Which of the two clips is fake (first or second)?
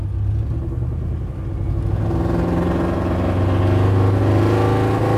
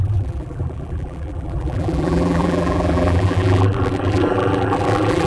second